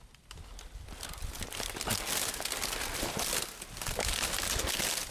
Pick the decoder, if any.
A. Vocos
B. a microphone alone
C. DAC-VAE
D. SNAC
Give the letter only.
B